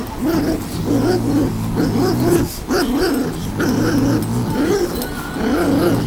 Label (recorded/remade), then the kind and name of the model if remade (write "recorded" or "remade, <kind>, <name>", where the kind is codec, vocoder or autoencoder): recorded